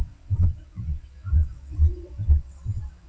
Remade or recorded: remade